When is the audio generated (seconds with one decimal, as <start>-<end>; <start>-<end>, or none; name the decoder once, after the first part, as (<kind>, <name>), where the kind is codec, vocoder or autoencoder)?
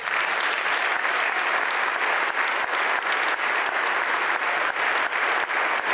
none